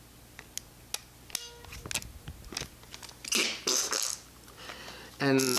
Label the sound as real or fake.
real